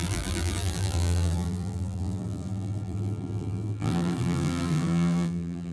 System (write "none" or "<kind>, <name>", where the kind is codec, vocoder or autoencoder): vocoder, BigVGAN v2